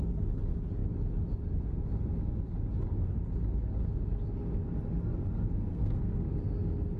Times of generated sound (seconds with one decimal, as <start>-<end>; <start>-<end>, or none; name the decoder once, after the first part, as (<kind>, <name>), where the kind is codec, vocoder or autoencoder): 5.7-6.2 (codec, SNAC)